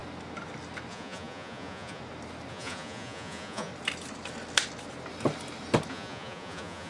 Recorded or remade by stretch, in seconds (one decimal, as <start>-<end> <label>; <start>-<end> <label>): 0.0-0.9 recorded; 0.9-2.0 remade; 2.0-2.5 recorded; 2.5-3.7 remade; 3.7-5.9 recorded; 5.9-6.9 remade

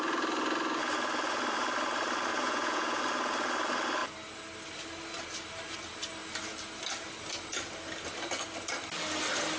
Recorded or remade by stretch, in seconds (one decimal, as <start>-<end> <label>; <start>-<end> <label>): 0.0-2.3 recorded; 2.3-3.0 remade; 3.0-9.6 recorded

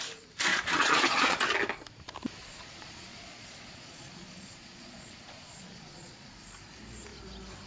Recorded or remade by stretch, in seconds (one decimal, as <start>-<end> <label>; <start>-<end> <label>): 0.0-0.5 recorded; 0.5-1.4 remade; 1.4-2.4 recorded; 2.4-6.3 remade; 6.3-7.7 recorded

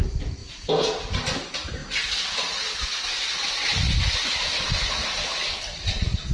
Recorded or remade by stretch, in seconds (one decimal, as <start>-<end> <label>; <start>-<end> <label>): 0.0-0.4 recorded; 0.4-1.0 remade; 1.0-6.3 recorded

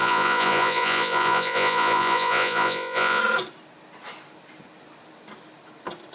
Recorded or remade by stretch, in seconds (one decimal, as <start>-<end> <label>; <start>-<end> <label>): 0.0-3.2 remade; 3.2-6.1 recorded